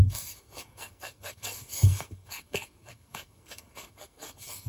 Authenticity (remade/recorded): remade